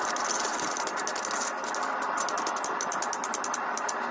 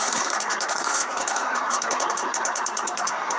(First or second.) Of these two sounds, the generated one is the second